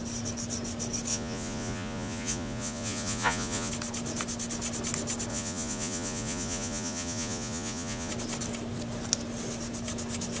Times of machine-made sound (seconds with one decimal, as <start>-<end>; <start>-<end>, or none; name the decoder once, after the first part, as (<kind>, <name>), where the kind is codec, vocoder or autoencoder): 1.1-3.7 (vocoder, Vocos); 5.3-8.1